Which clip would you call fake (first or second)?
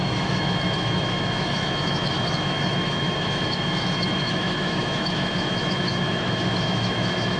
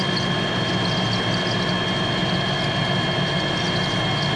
first